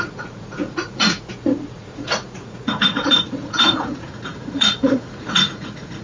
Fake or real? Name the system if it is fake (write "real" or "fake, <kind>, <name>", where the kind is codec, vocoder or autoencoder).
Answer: fake, vocoder, Vocos